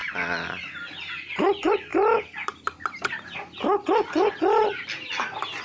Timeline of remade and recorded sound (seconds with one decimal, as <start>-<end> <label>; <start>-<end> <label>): 0.0-5.6 recorded